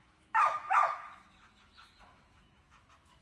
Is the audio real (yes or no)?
no